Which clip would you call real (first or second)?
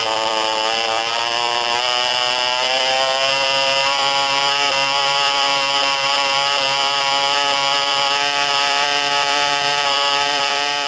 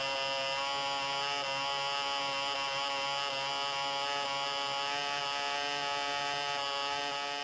second